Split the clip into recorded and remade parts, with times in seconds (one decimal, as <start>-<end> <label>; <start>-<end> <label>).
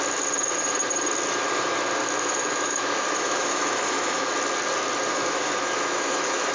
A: 0.0-2.0 recorded; 2.0-4.3 remade; 4.3-5.1 recorded; 5.1-6.5 remade